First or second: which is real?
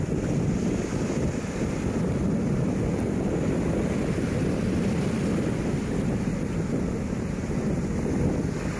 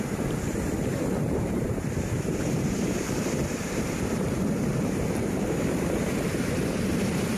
first